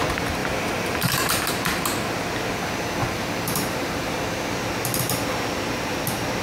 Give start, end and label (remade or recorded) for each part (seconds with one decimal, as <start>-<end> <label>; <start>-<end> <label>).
0.0-0.4 recorded; 0.4-1.5 remade; 1.5-3.0 recorded; 3.0-4.2 remade; 4.2-6.4 recorded